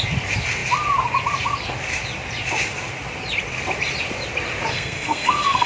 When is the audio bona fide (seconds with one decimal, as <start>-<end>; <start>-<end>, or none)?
0.0-4.7